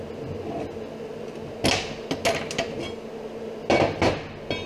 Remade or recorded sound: recorded